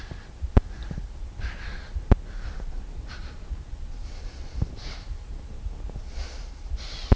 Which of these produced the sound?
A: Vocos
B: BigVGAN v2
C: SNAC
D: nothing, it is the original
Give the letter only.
D